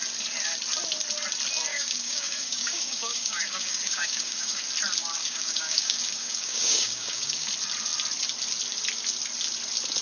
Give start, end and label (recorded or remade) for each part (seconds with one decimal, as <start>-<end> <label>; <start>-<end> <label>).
0.0-1.7 recorded; 1.7-4.6 remade; 4.6-5.2 recorded; 5.2-7.5 remade; 7.5-10.0 recorded